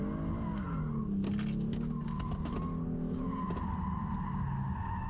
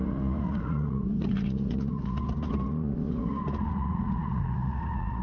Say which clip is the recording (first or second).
first